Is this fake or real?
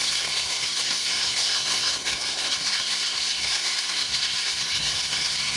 fake